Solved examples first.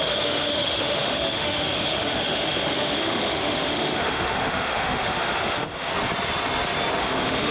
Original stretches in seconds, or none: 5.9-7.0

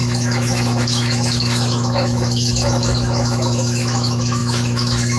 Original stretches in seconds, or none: none

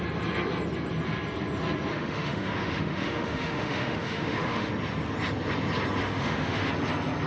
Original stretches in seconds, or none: 0.0-1.9; 4.7-6.0; 6.7-7.3

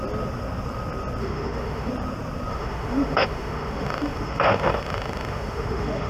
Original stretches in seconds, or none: 0.0-1.2; 1.9-2.5

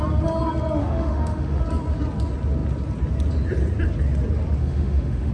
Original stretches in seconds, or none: 0.0-0.8; 1.6-4.6

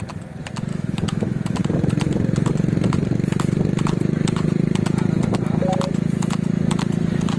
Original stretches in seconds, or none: 0.0-0.7; 1.6-7.4